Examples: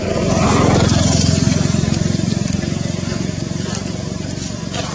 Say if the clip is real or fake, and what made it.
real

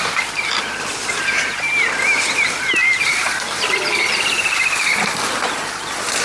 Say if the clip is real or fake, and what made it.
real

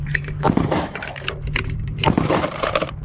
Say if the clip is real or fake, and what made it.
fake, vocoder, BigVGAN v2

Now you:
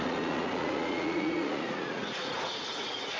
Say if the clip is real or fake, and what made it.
fake, vocoder, Vocos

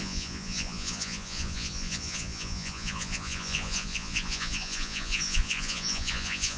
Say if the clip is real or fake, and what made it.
fake, vocoder, Vocos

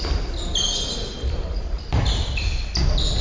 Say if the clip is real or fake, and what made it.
real